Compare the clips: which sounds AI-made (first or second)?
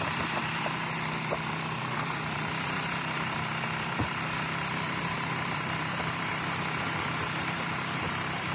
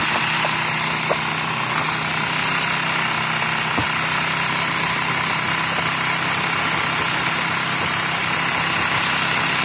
first